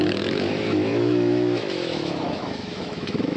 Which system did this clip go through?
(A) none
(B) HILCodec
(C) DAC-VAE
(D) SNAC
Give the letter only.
C